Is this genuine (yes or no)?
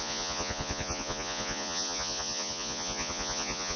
no